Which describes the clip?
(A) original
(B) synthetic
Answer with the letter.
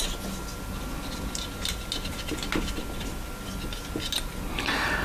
A